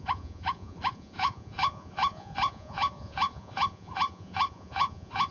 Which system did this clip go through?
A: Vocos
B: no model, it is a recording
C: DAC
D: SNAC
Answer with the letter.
A